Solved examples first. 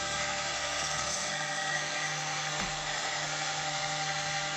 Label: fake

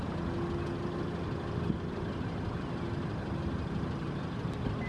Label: real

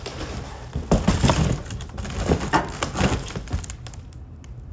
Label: real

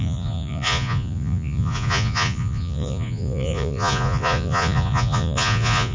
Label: fake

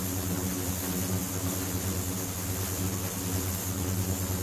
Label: real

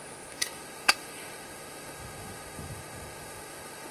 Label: fake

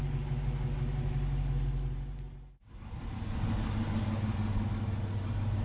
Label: real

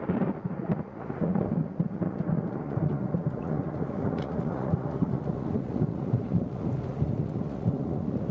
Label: fake